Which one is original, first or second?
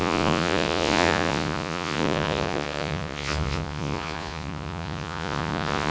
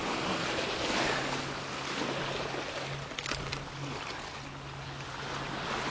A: second